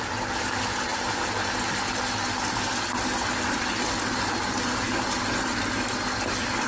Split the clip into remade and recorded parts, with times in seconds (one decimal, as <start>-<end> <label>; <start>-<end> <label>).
0.0-6.7 recorded